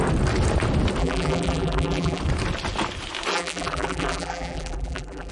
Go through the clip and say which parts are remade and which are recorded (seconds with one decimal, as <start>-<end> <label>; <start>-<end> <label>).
0.0-1.0 recorded; 1.0-2.2 remade; 2.2-3.3 recorded; 3.3-5.3 remade